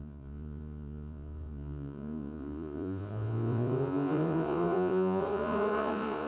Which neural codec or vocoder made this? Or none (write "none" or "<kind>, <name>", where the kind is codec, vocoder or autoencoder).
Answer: vocoder, Vocos